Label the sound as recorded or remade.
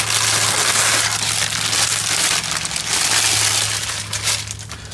recorded